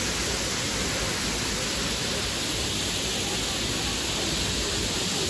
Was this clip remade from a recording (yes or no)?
no